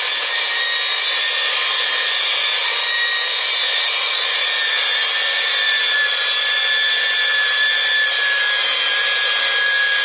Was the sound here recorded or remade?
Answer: remade